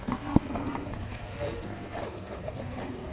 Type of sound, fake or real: fake